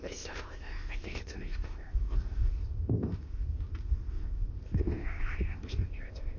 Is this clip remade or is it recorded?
remade